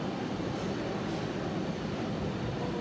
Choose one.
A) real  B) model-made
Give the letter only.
A